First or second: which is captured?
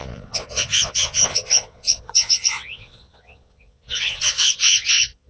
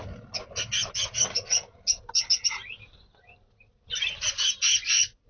second